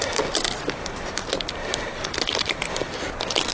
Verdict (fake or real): real